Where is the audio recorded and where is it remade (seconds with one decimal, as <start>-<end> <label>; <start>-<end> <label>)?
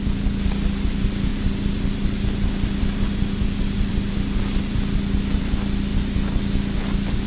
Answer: 0.0-7.3 recorded